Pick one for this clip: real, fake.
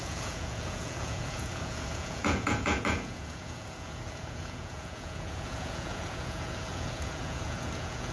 fake